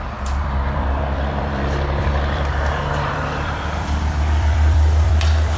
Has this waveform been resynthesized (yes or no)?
yes